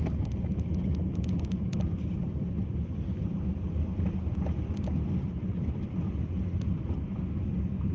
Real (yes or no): yes